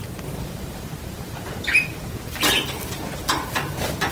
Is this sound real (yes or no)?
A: no